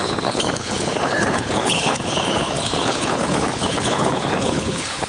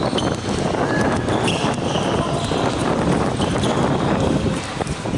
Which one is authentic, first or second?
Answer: second